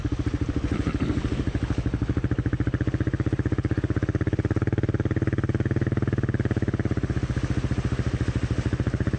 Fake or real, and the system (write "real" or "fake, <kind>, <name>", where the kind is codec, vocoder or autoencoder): real